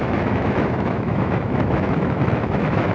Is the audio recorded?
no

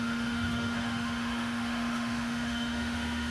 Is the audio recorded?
no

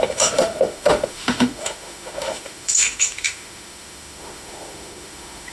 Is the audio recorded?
no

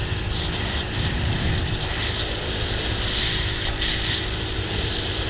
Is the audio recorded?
yes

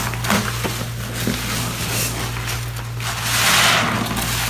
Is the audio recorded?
yes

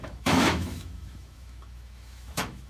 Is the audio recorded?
no